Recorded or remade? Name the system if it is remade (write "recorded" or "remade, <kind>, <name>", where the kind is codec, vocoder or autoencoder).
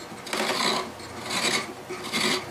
recorded